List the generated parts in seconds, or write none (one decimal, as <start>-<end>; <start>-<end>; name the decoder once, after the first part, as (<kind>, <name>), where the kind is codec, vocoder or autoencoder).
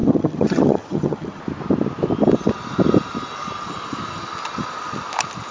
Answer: 0.0-1.4 (vocoder, HiFi-GAN)